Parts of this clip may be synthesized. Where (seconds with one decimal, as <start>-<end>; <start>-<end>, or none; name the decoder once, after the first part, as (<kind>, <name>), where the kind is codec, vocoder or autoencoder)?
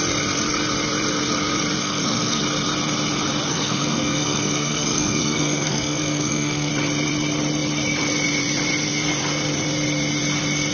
1.8-2.4 (codec, SNAC); 3.5-6.7